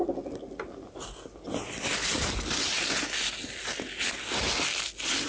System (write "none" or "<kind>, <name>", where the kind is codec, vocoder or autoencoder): none